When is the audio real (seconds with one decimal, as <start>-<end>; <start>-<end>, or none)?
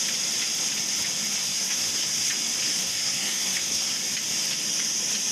0.0-1.4; 2.3-2.7; 4.0-5.3